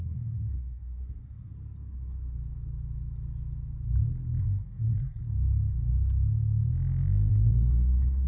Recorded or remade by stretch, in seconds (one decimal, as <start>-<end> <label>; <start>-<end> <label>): 0.0-1.5 remade; 1.5-4.4 recorded; 4.4-5.2 remade; 5.2-7.3 recorded; 7.3-8.3 remade